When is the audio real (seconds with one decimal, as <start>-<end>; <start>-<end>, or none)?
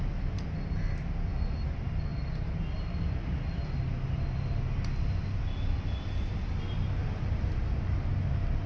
0.0-8.7